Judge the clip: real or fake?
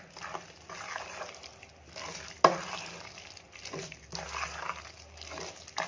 real